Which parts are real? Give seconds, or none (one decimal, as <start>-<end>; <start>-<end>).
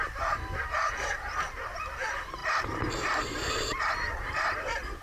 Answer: 2.4-3.8